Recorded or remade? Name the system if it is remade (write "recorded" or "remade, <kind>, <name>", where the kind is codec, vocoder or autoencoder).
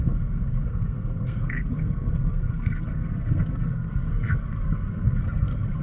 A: remade, codec, SNAC